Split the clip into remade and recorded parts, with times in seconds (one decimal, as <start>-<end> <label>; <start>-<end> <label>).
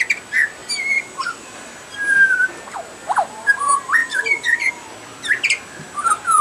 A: 0.0-4.0 recorded; 4.0-4.7 remade; 4.7-6.4 recorded